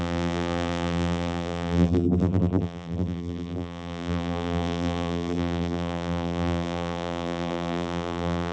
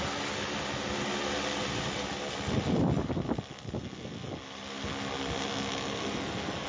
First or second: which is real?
second